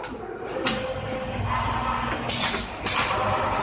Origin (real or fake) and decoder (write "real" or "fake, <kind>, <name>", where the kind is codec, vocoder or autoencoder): real